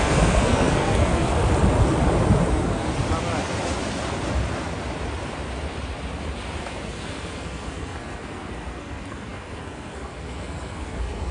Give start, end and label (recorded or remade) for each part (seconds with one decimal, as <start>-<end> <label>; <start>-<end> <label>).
0.0-1.3 remade; 1.3-2.5 recorded; 2.5-2.9 remade; 2.9-6.6 recorded; 6.6-11.3 remade